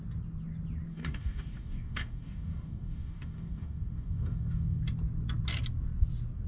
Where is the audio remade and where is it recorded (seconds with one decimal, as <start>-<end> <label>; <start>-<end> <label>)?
0.0-0.9 recorded; 0.9-4.8 remade; 4.8-6.5 recorded